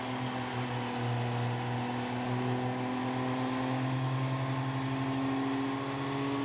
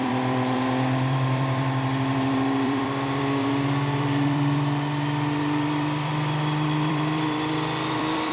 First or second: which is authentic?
first